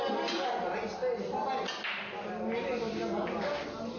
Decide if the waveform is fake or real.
real